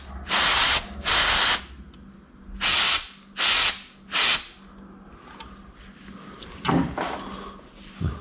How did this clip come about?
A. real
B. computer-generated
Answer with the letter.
A